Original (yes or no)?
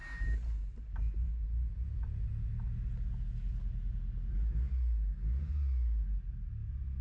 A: yes